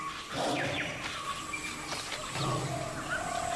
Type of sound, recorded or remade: recorded